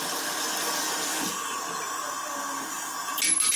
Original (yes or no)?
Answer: yes